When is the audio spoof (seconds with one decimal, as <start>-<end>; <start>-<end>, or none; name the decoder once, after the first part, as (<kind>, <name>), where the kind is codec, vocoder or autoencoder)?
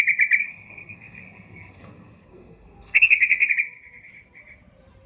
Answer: 0.4-3.5 (codec, SNAC)